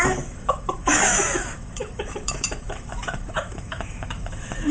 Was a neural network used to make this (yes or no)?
yes